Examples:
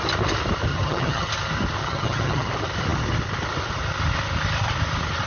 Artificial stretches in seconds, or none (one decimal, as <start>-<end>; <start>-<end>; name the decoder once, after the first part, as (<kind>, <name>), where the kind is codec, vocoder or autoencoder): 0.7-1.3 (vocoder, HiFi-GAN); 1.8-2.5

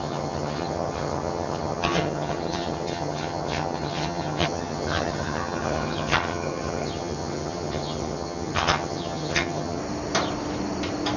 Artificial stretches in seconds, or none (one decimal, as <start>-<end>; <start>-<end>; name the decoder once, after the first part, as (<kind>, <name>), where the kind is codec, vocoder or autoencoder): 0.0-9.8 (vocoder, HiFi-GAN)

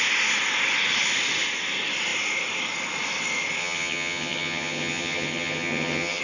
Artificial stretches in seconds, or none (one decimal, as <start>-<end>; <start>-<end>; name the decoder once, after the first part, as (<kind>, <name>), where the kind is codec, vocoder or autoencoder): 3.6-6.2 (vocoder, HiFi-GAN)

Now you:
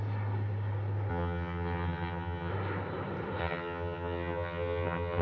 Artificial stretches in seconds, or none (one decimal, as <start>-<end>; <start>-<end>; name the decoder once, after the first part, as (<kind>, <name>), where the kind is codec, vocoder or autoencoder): 1.1-2.5 (vocoder, HiFi-GAN); 3.4-5.2